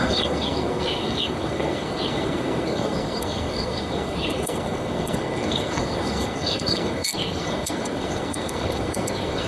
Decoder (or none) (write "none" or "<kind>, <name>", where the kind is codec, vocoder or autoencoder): codec, SNAC